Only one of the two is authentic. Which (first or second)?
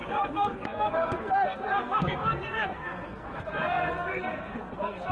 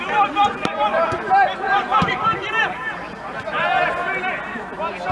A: second